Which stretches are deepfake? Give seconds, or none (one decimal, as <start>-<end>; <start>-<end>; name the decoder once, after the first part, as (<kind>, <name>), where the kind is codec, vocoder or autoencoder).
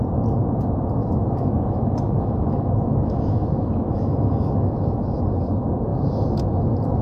1.0-5.2 (autoencoder, DAC-VAE); 5.9-6.4